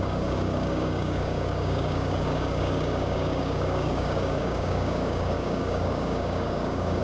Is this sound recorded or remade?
remade